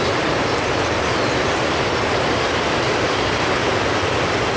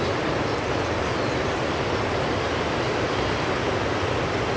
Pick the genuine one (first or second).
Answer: second